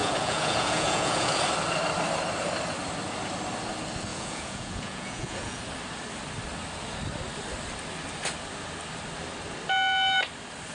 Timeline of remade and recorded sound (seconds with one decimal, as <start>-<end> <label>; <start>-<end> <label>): 0.0-1.4 remade; 1.4-4.1 recorded; 4.1-5.6 remade; 5.6-10.7 recorded